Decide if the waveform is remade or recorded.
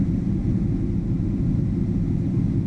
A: recorded